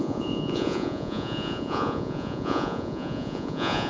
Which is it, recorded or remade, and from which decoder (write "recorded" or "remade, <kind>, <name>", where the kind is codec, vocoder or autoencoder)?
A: remade, vocoder, Vocos